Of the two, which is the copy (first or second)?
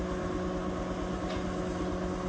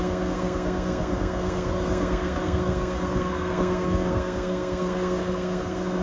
second